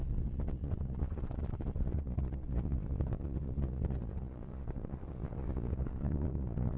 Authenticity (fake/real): fake